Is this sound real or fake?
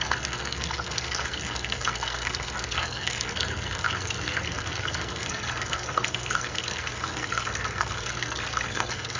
fake